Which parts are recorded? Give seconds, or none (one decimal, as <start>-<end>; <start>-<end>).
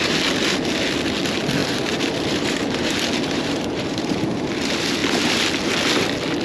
0.0-1.6; 4.4-6.4